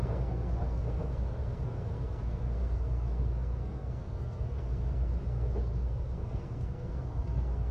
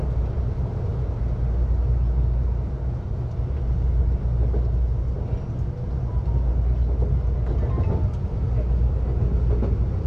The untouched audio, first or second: second